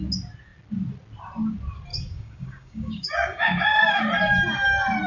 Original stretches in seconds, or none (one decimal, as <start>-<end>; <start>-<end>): 0.0-1.9; 4.0-5.1